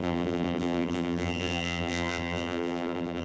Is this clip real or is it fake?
fake